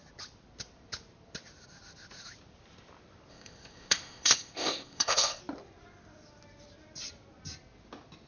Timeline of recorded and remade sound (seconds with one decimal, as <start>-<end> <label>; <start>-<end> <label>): 0.0-3.3 recorded; 3.3-5.4 remade; 5.4-8.3 recorded

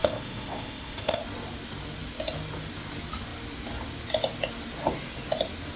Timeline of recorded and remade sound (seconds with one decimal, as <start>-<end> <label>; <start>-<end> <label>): 0.0-1.2 remade; 1.2-5.8 recorded